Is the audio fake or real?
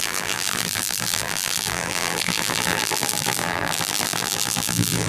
fake